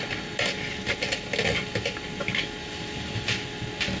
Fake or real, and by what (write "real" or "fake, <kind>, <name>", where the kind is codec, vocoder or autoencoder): real